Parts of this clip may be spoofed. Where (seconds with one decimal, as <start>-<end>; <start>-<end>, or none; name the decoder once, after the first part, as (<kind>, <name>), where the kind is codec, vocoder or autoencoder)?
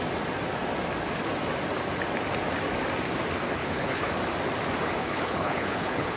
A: 3.6-4.1 (codec, HILCodec); 5.0-6.2